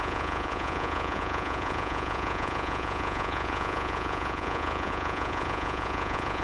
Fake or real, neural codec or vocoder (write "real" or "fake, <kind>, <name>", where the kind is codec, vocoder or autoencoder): fake, vocoder, Vocos